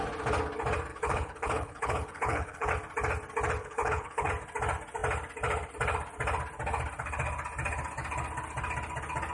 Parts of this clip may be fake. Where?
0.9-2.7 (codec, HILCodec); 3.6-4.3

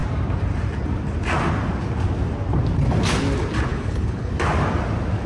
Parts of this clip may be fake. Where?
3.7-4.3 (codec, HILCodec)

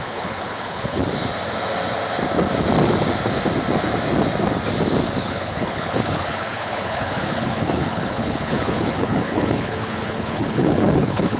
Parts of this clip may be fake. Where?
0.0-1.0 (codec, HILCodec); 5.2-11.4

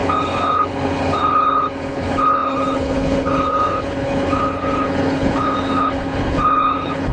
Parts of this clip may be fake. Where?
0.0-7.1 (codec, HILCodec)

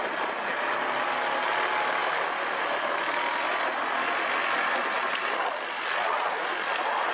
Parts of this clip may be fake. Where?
none